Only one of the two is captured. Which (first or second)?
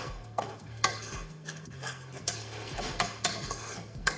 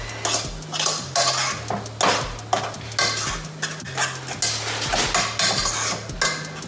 second